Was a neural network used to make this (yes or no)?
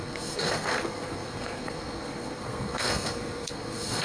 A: yes